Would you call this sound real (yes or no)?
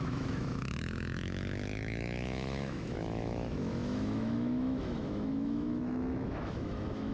no